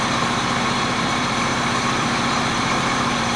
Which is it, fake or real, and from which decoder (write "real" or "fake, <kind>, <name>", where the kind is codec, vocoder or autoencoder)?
fake, vocoder, BigVGAN v2